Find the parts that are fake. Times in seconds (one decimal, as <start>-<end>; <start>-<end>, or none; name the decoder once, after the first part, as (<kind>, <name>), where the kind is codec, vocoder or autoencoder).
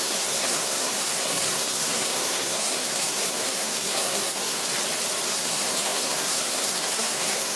0.0-4.6 (codec, SNAC); 5.3-7.6